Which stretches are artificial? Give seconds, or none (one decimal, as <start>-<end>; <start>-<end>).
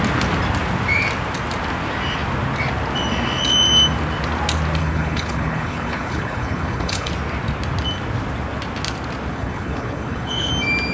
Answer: 4.8-7.1; 9.3-10.5